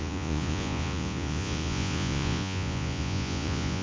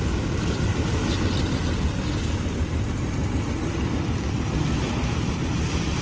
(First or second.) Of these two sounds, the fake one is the first